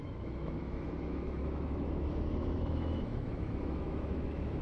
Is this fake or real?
fake